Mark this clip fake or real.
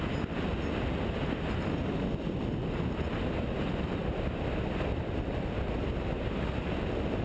real